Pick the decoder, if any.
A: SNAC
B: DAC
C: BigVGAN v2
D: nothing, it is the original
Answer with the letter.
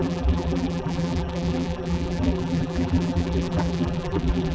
C